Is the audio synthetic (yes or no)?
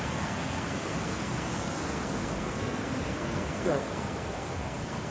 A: yes